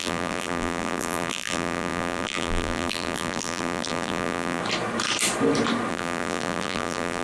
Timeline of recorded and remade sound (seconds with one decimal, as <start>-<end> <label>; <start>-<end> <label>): 0.0-4.6 remade; 4.6-5.9 recorded; 5.9-7.2 remade